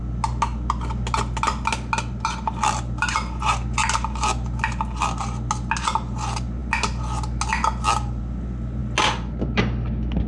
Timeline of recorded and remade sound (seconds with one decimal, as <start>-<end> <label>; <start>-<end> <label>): 0.0-10.3 recorded